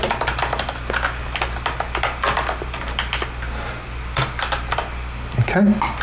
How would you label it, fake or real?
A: real